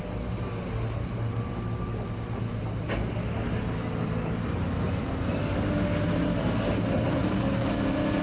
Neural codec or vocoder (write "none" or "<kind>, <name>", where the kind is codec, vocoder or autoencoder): none